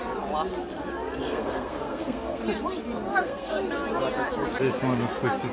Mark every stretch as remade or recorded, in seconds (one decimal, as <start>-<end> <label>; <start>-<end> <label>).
0.0-1.2 recorded; 1.2-2.4 remade; 2.4-3.1 recorded; 3.1-3.7 remade; 3.7-5.5 recorded